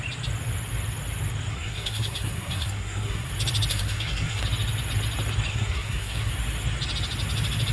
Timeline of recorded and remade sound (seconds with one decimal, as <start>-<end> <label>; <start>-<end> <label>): 0.0-1.5 recorded; 1.5-3.3 remade; 3.3-3.7 recorded; 3.7-4.4 remade; 4.4-5.5 recorded; 5.5-6.3 remade; 6.3-7.7 recorded